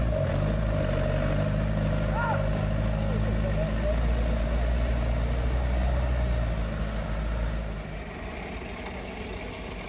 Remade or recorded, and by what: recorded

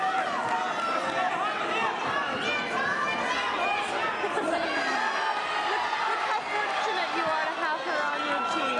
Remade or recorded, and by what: recorded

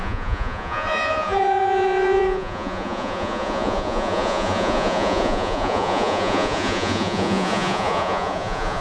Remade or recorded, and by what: remade, vocoder, Vocos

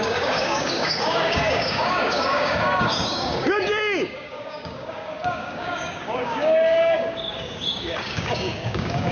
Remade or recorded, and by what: remade, codec, DAC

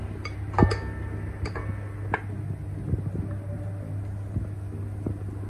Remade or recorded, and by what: recorded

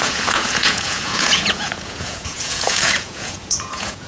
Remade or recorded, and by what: remade, vocoder, Vocos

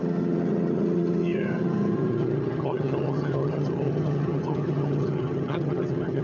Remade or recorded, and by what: remade, vocoder, HiFi-GAN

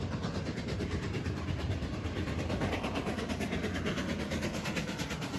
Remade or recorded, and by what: remade, vocoder, BigVGAN v2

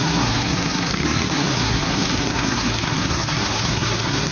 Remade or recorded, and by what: remade, codec, SNAC